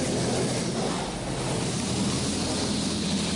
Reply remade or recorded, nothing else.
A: recorded